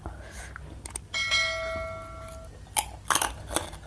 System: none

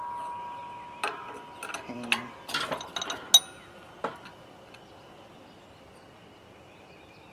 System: none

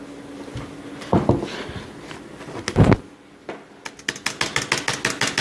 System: none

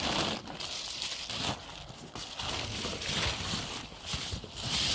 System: none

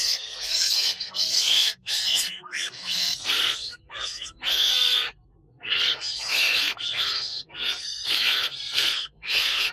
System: codec, SNAC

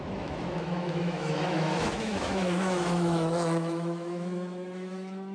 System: autoencoder, DAC-VAE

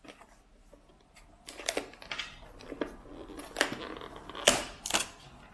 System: none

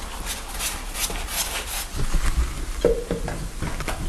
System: none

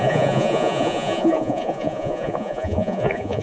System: vocoder, Vocos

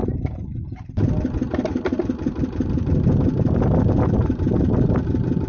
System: none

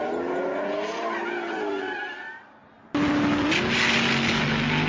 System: none